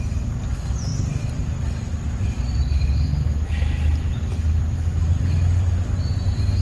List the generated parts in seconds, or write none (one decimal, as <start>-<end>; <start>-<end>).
none

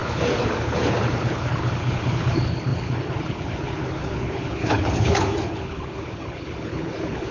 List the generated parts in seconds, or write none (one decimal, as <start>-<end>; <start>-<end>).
0.0-7.3